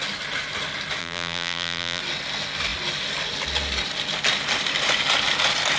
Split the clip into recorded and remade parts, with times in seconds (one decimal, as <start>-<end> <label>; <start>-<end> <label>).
0.0-1.0 recorded; 1.0-2.0 remade; 2.0-5.8 recorded